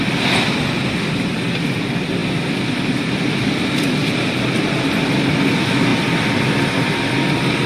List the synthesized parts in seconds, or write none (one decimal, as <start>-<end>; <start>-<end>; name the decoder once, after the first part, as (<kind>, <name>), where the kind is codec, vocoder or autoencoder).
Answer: none

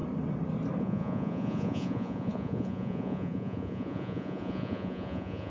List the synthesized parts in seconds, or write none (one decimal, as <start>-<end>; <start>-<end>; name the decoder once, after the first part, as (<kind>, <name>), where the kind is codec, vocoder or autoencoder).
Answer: 0.8-5.5 (vocoder, Vocos)

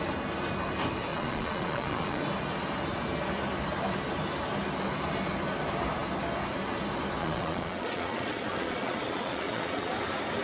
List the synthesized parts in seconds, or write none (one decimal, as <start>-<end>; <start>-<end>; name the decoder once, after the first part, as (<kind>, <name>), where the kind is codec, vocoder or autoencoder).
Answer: 1.1-2.2 (vocoder, Vocos); 7.2-9.9

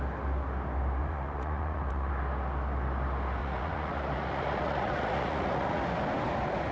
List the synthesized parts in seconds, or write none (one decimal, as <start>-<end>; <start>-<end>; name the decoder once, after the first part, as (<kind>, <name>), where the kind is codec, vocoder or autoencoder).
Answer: 1.0-2.1 (vocoder, Vocos); 3.4-5.8